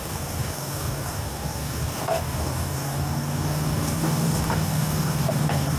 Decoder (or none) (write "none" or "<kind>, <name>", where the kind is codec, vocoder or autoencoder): codec, DAC